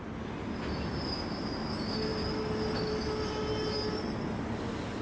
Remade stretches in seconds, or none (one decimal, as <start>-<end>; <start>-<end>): none